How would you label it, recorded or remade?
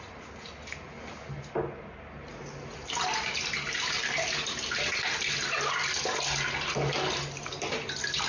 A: recorded